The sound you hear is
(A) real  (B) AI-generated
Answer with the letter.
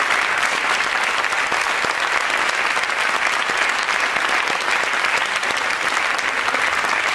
A